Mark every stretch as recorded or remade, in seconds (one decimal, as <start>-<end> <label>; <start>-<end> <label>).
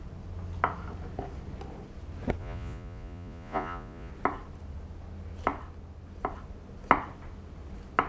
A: 0.0-2.4 recorded; 2.4-4.1 remade; 4.1-8.1 recorded